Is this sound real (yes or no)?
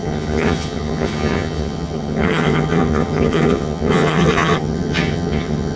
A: no